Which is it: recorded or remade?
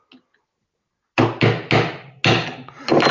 recorded